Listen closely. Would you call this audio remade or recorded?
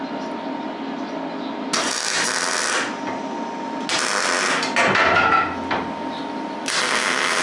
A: recorded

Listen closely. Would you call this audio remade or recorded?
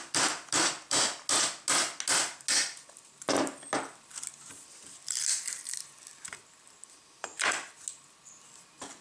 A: recorded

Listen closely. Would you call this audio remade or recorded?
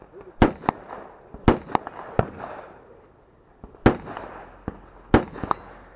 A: recorded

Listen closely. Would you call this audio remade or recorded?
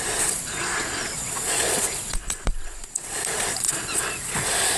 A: remade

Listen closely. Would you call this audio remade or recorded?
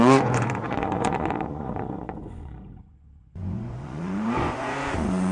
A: remade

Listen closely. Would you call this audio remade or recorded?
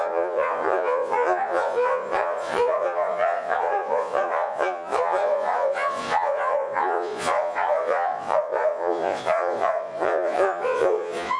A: remade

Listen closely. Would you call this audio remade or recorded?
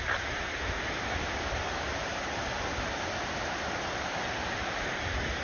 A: recorded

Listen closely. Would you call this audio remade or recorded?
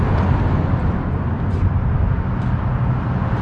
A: recorded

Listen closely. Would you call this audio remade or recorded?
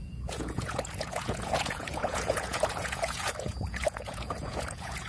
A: remade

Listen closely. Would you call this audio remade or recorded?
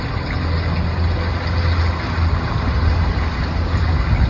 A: recorded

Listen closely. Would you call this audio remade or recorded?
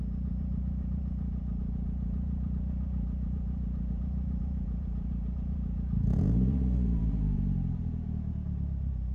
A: remade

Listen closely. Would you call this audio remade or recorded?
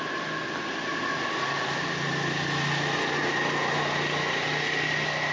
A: recorded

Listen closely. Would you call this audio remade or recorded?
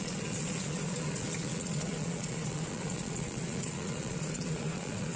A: remade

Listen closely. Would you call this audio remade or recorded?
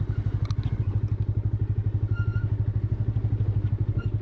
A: recorded